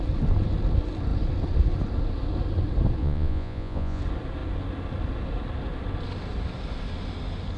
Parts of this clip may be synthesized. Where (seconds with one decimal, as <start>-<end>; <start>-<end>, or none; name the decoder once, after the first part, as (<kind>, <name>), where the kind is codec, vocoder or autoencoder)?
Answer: 3.0-4.0 (vocoder, Vocos)